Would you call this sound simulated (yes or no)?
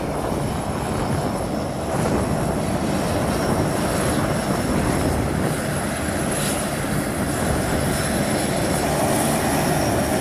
no